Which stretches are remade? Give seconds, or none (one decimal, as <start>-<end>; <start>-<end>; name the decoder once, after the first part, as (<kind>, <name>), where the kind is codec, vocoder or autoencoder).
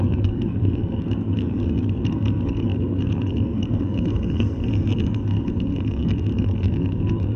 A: 0.0-7.4 (codec, SNAC)